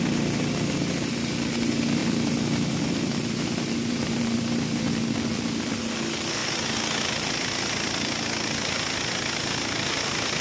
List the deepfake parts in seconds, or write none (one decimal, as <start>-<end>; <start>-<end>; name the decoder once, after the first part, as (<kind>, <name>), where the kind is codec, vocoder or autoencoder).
2.0-5.8 (vocoder, BigVGAN v2)